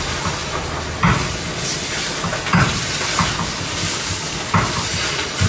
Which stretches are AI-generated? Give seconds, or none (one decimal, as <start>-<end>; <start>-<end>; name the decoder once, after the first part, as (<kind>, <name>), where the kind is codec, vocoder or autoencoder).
3.8-4.5 (codec, DAC)